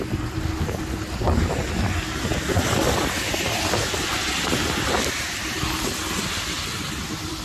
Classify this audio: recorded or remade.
recorded